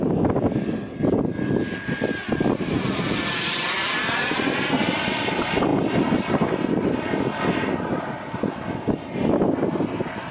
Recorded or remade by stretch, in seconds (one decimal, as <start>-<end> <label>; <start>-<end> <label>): 0.0-10.3 recorded